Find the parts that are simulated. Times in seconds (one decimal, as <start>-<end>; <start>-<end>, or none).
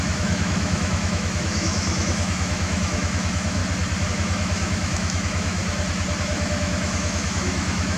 0.0-3.6; 4.1-5.6; 6.2-8.0